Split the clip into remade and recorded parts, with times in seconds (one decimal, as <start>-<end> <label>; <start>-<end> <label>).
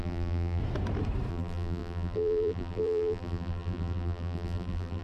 0.0-0.6 remade; 0.6-1.3 recorded; 1.3-5.0 remade